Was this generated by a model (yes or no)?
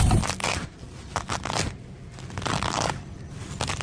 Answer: yes